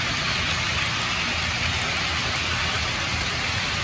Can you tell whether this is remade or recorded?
recorded